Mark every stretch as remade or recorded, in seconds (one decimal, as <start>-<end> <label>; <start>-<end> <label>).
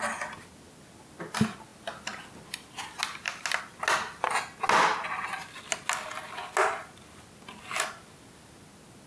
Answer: 0.0-9.1 recorded